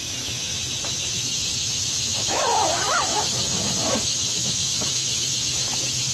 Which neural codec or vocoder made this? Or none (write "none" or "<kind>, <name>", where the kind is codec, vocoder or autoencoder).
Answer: autoencoder, DAC-VAE